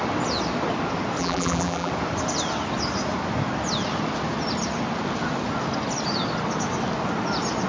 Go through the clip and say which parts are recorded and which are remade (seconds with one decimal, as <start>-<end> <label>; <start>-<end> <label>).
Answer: 0.0-1.2 recorded; 1.2-1.9 remade; 1.9-7.7 recorded